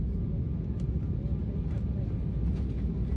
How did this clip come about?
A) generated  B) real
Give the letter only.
B